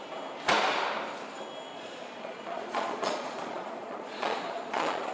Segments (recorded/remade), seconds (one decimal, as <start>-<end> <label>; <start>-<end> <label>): 0.0-1.7 recorded; 1.7-5.1 remade